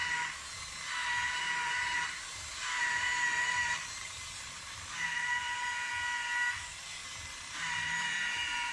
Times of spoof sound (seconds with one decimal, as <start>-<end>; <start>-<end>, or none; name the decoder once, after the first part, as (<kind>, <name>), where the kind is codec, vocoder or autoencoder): 1.0-5.9 (vocoder, BigVGAN v2); 7.0-8.7